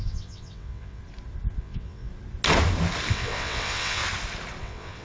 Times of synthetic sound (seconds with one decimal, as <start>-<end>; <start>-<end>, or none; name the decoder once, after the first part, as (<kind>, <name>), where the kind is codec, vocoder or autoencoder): 0.0-1.0 (vocoder, WaveNeXt); 1.6-2.1; 3.1-4.0; 4.6-5.0